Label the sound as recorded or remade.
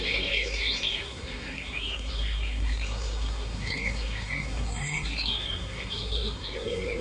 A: remade